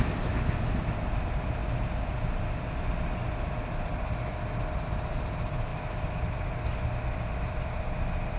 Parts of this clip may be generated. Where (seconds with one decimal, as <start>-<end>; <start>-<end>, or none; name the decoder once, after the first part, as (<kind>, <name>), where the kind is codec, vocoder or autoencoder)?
0.0-1.6 (vocoder, BigVGAN v2); 4.7-5.7